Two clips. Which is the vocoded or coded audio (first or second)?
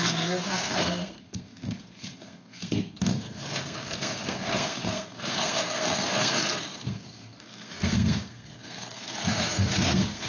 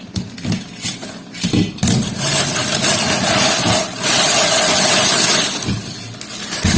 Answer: first